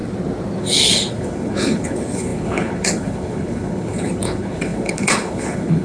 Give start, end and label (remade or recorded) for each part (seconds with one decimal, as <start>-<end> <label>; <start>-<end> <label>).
0.0-0.6 recorded; 0.6-5.8 remade